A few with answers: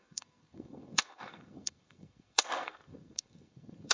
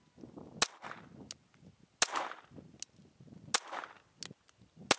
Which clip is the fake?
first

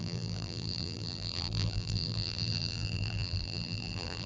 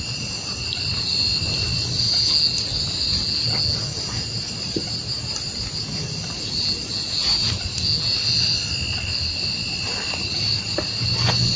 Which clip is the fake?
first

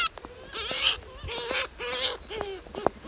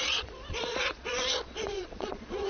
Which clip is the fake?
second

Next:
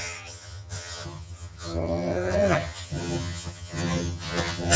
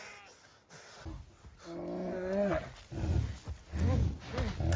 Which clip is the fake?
first